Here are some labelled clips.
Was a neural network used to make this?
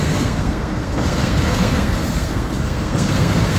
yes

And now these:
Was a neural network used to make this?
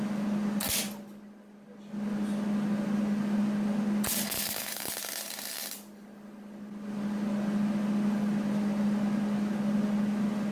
no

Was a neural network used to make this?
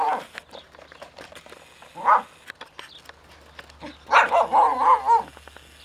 no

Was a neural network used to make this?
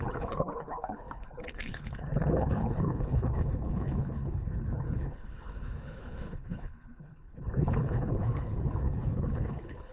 yes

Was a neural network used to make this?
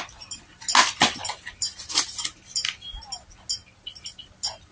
no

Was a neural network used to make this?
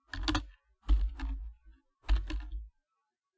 no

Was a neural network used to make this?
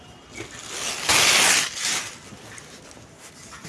no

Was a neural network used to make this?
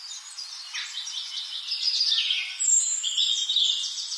no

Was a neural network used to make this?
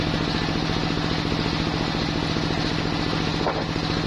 no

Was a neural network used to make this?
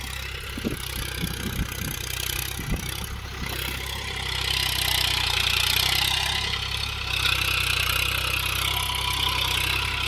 no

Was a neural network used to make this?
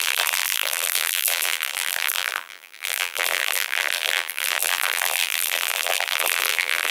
yes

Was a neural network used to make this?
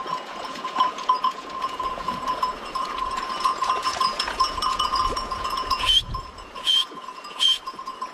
yes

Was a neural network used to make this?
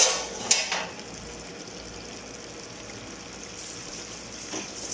no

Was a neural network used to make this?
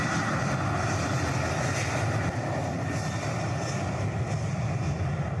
no